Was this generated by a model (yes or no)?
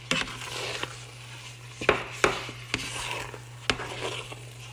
no